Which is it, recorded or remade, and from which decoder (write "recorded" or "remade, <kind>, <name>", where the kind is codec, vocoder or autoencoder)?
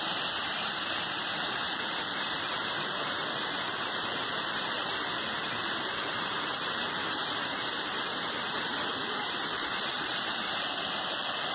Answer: remade, vocoder, BigVGAN v2